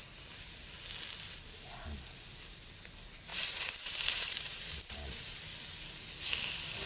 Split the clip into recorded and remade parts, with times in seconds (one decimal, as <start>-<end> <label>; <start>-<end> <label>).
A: 0.0-3.3 recorded; 3.3-5.4 remade; 5.4-6.9 recorded